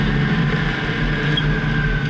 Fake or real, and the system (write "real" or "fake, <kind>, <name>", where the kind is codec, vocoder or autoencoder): real